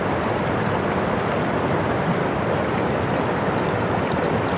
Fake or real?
real